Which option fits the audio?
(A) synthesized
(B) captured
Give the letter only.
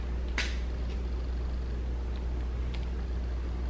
B